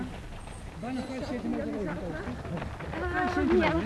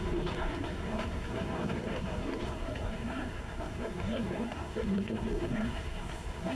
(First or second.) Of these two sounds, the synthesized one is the second